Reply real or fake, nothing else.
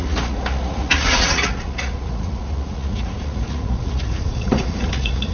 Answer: fake